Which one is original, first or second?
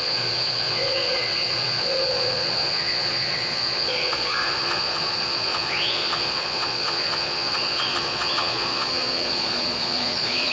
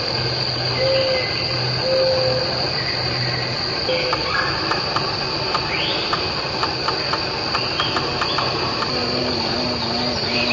second